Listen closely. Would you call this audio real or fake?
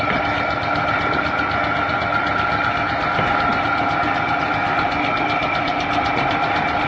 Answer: real